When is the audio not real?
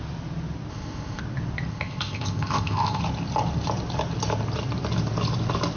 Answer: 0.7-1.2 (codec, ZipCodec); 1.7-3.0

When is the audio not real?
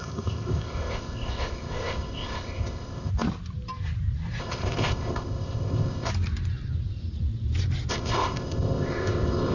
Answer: 0.0-3.1 (codec, ZipCodec); 4.4-6.1; 7.9-9.5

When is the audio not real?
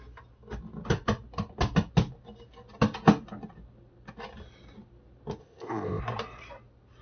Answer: 5.4-6.0 (codec, ZipCodec)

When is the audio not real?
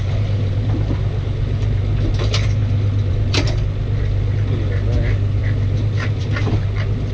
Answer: none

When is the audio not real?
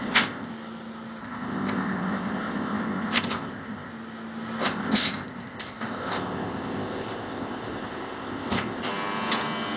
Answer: 0.0-0.5 (codec, ZipCodec); 1.2-3.9; 4.6-8.9